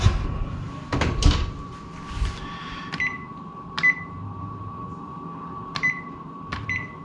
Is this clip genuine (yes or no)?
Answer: no